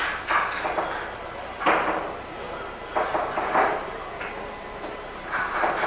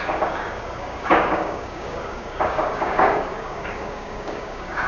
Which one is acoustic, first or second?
first